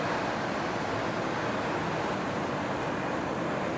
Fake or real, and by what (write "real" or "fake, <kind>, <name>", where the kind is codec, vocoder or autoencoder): real